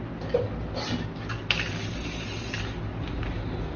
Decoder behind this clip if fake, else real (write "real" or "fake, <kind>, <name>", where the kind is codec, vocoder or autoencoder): real